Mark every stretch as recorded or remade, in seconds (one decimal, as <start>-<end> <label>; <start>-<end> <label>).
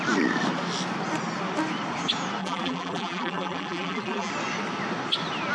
0.0-2.4 recorded; 2.4-4.3 remade; 4.3-5.5 recorded